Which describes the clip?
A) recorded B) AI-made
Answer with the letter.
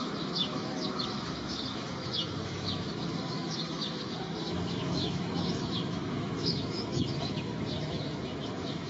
B